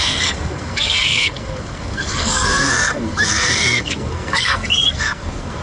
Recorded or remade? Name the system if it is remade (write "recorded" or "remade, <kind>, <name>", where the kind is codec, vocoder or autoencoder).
remade, codec, SNAC